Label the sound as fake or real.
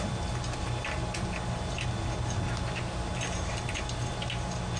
real